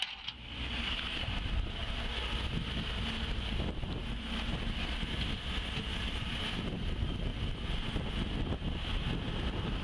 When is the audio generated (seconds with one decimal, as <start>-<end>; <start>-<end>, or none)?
none